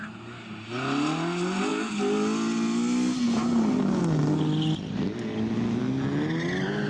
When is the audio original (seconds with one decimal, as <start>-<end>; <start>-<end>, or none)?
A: 0.0-6.9